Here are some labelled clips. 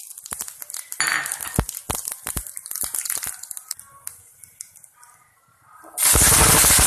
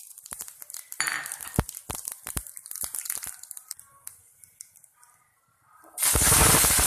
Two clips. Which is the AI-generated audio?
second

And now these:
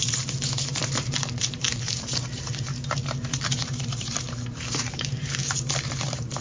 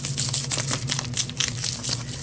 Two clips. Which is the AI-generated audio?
first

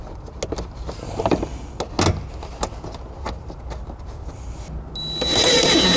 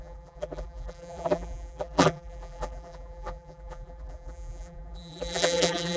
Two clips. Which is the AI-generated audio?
second